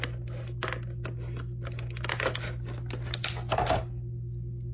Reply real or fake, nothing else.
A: real